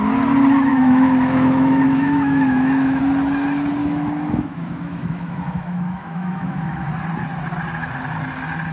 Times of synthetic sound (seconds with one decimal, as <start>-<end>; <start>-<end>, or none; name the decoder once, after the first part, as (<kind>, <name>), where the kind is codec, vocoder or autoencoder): 0.7-3.0 (autoencoder, DAC-VAE); 3.8-6.9